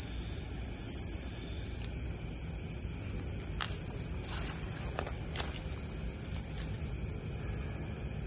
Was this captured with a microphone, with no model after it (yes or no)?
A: yes